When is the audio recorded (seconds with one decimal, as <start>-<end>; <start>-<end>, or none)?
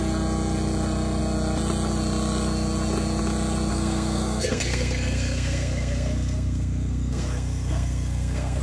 0.0-3.7